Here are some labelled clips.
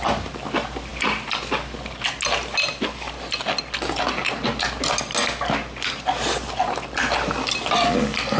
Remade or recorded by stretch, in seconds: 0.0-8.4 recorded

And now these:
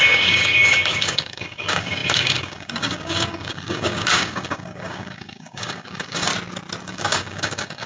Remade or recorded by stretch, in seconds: 0.0-6.3 remade; 6.3-6.8 recorded; 6.8-7.9 remade